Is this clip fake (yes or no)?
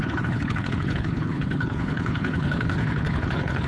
yes